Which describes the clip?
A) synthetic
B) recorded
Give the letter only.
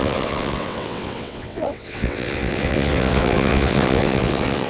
A